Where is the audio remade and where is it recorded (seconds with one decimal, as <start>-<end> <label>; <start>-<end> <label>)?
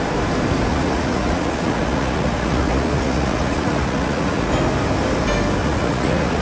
0.0-0.7 recorded; 0.7-4.5 remade; 4.5-5.6 recorded; 5.6-6.4 remade